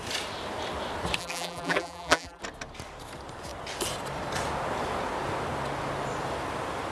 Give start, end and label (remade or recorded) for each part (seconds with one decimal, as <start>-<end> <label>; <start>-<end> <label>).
0.0-1.2 recorded; 1.2-2.4 remade; 2.4-6.9 recorded